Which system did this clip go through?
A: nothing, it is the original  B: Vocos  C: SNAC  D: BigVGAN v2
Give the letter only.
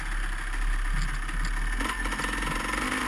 A